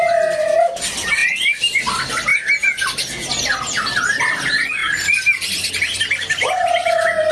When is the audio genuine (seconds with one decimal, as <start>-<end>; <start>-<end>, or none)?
0.0-7.3